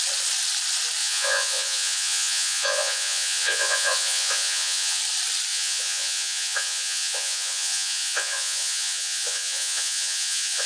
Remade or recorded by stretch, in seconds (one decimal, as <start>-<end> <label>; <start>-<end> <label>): 0.0-1.0 recorded; 1.0-5.0 remade; 5.0-5.5 recorded; 5.5-10.7 remade